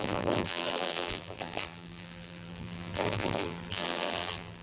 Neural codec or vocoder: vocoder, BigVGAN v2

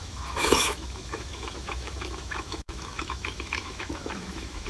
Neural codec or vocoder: autoencoder, DAC-VAE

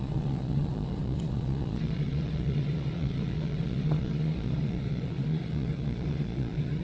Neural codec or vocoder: vocoder, Vocos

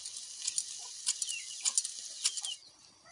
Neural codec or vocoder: none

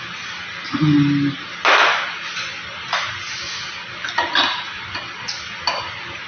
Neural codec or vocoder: none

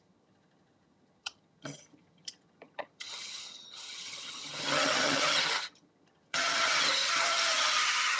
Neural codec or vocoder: vocoder, HiFi-GAN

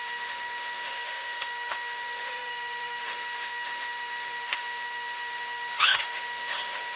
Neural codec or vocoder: autoencoder, DAC-VAE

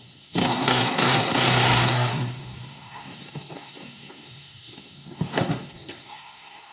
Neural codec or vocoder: codec, SNAC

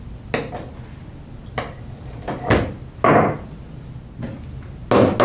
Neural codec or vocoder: none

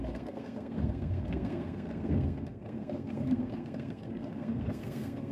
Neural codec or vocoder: codec, SNAC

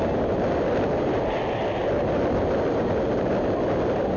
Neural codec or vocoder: none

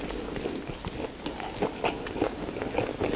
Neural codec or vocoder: none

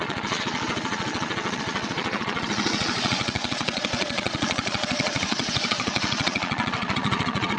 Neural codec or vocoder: vocoder, Vocos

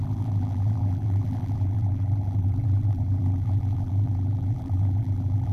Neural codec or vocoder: vocoder, BigVGAN v2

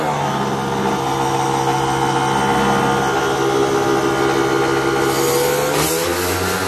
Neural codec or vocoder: none